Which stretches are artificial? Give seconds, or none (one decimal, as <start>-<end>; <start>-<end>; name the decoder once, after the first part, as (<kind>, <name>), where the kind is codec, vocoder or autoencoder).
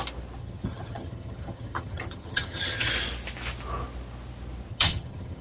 0.4-2.9 (vocoder, HiFi-GAN); 4.7-5.4